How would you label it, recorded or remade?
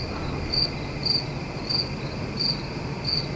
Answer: recorded